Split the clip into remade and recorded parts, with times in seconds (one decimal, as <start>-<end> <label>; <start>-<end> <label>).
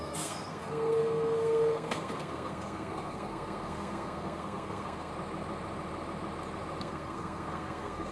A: 0.0-5.1 remade; 5.1-6.8 recorded; 6.8-8.1 remade